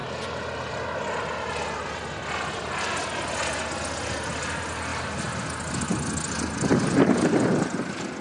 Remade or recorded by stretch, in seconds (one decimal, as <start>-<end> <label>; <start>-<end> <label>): 0.0-8.2 recorded